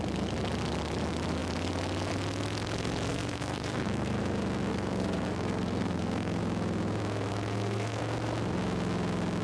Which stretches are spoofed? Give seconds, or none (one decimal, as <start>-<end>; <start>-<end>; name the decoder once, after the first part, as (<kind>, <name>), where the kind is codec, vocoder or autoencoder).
3.1-4.2 (codec, SNAC); 4.7-6.4; 7.3-8.0